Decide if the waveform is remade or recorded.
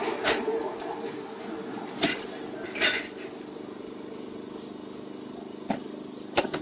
recorded